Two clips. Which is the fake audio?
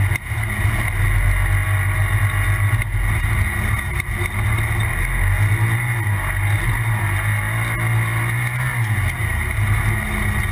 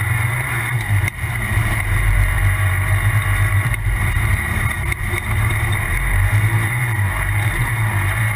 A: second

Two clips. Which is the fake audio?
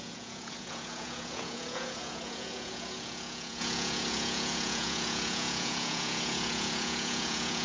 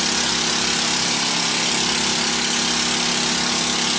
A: first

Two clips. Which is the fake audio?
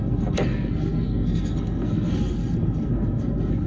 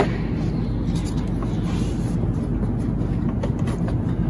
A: first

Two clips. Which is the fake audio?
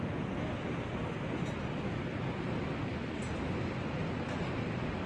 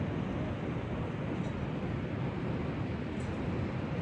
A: second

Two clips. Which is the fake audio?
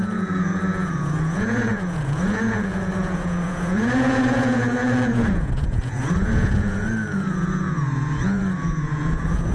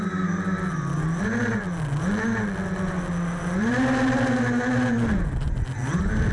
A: first